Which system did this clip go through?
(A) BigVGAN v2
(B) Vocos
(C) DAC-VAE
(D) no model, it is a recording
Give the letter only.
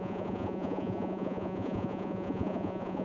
B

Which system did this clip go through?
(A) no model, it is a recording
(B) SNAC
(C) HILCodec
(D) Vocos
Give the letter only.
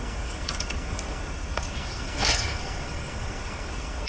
B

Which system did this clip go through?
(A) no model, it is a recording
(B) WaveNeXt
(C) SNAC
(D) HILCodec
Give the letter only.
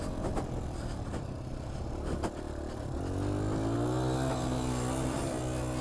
A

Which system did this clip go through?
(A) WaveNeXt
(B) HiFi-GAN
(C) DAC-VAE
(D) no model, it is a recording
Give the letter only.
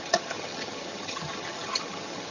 B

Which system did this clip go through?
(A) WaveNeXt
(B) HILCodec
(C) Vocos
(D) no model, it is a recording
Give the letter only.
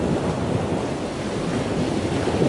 D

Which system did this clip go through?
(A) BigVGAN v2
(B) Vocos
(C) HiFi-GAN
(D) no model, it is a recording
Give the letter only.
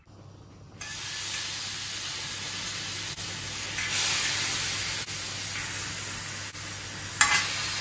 D